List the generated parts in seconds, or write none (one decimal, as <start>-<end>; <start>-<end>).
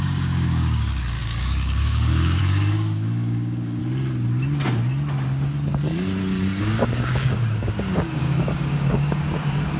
0.0-3.8; 6.6-9.8